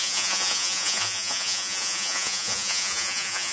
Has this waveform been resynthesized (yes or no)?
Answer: yes